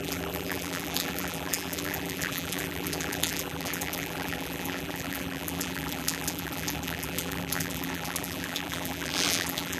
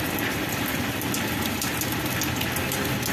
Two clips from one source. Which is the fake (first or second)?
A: first